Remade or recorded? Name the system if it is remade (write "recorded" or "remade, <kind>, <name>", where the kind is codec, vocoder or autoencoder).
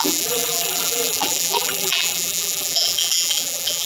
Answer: remade, vocoder, BigVGAN v2